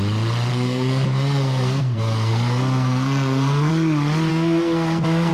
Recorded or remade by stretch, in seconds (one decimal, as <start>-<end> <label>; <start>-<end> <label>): 0.0-0.5 recorded; 0.5-3.7 remade; 3.7-4.3 recorded; 4.3-5.3 remade